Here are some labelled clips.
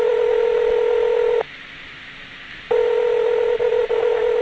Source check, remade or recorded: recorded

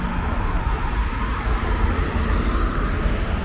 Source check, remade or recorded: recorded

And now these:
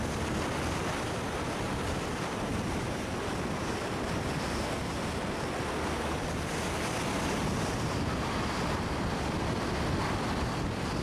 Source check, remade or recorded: recorded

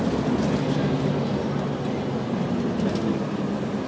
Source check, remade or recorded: recorded